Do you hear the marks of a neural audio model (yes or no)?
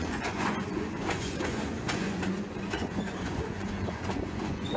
yes